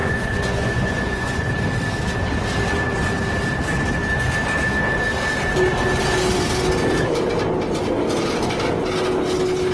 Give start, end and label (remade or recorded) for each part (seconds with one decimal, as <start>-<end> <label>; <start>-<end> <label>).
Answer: 0.0-1.5 remade; 1.5-9.7 recorded